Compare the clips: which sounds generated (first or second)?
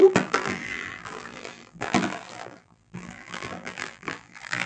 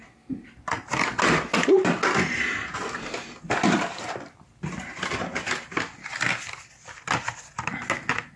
first